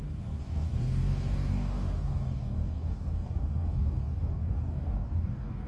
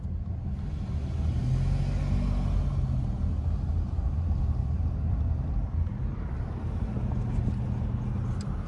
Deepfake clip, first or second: first